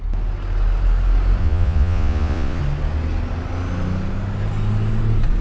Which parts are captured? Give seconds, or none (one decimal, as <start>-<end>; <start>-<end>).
0.0-1.4; 2.6-5.4